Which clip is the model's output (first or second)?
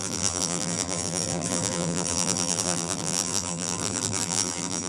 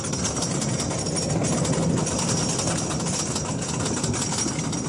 first